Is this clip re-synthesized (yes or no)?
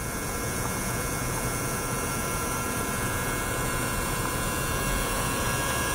yes